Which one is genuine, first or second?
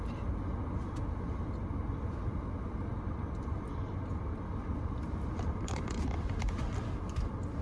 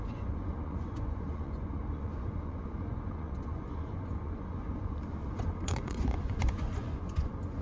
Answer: first